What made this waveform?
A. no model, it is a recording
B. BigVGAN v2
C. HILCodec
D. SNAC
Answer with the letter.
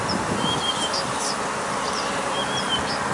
A